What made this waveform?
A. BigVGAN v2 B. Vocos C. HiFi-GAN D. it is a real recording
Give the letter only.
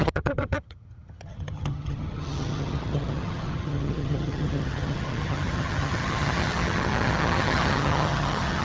C